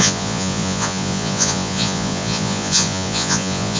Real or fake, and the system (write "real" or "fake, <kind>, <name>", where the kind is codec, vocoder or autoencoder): fake, vocoder, Vocos